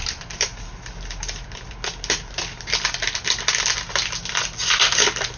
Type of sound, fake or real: real